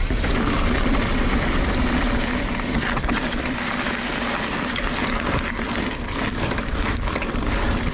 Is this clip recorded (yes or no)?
no